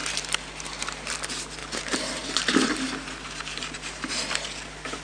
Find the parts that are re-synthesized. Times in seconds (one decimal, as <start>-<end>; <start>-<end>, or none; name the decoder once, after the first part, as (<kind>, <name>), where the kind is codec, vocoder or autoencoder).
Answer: 0.0-1.1 (vocoder, BigVGAN v2); 1.6-4.1